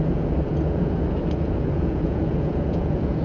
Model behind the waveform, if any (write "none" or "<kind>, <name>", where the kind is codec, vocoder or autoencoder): vocoder, Vocos